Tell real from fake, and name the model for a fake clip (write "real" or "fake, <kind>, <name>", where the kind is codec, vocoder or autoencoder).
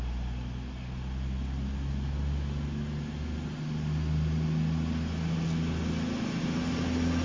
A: real